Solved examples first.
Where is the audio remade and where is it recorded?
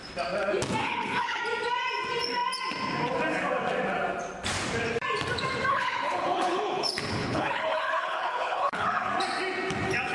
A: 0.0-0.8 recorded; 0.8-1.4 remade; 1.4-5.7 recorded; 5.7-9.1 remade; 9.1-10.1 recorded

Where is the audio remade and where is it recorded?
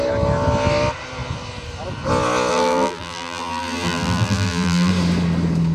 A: 0.0-2.5 recorded; 2.5-4.9 remade; 4.9-5.7 recorded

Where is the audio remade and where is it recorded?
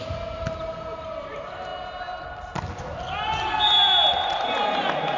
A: 0.0-5.2 recorded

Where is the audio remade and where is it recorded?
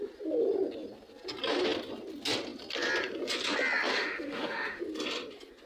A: 0.0-3.9 recorded; 3.9-4.8 remade; 4.8-5.7 recorded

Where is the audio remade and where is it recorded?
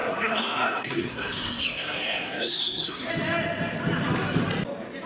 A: 0.0-3.1 remade; 3.1-5.1 recorded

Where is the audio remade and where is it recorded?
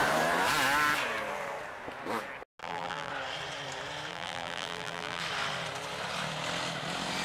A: 0.0-2.6 recorded; 2.6-3.1 remade; 3.1-4.1 recorded; 4.1-5.2 remade; 5.2-7.2 recorded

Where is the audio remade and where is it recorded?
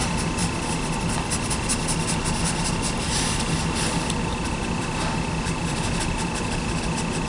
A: 0.0-7.3 recorded